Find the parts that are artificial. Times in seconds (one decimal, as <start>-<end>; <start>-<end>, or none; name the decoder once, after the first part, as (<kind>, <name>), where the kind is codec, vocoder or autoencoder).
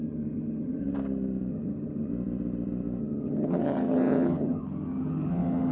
0.0-0.8 (vocoder, HiFi-GAN); 1.5-2.1; 3.0-5.7